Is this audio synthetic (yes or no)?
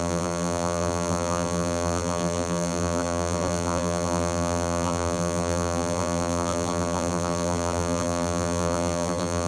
yes